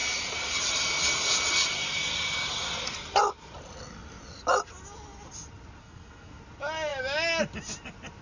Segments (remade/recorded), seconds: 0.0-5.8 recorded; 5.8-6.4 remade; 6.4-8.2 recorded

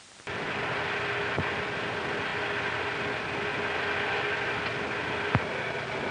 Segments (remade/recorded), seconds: 0.0-6.1 recorded

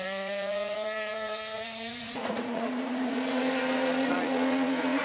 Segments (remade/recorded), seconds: 0.0-5.0 remade

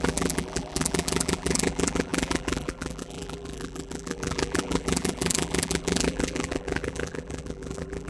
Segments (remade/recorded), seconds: 0.0-8.1 remade

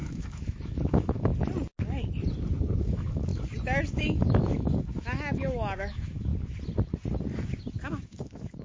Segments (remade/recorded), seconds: 0.0-1.3 remade; 1.3-2.8 recorded; 2.8-3.3 remade; 3.3-3.9 recorded; 3.9-6.3 remade; 6.3-7.9 recorded; 7.9-8.6 remade